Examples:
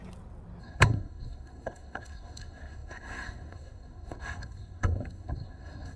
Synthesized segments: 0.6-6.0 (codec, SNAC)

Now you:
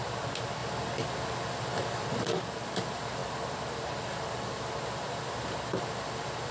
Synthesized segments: 0.0-3.2 (vocoder, BigVGAN v2); 4.0-6.5

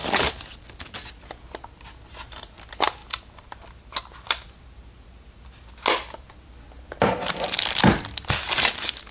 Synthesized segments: none